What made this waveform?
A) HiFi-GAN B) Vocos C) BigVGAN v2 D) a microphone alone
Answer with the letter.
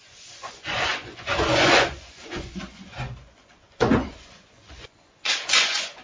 B